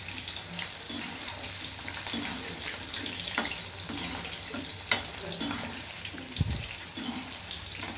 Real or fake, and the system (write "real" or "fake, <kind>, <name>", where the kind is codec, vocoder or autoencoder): real